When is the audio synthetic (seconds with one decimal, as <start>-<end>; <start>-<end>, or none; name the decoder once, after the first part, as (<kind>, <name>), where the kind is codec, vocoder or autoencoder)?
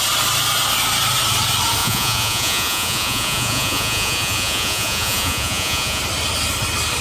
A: 1.8-6.0 (vocoder, Vocos)